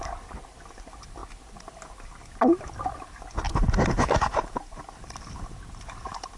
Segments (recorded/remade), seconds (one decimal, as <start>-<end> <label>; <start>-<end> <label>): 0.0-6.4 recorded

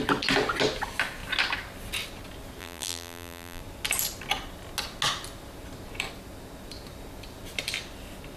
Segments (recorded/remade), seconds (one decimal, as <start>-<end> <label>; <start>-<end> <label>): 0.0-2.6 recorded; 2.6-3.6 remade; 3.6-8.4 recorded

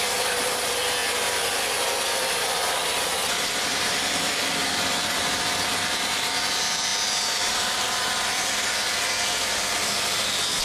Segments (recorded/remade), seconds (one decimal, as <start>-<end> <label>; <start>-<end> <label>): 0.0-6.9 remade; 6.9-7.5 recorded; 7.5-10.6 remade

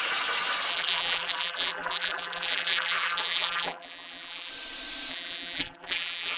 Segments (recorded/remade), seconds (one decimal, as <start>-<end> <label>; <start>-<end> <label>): 0.0-0.7 recorded; 0.7-4.5 remade; 4.5-5.1 recorded; 5.1-6.4 remade